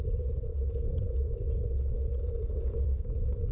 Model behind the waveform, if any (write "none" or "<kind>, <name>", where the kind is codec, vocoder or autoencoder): vocoder, BigVGAN v2